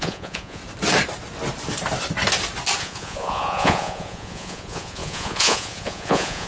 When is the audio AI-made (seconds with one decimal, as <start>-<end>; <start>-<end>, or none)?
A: 0.0-0.6; 2.8-6.5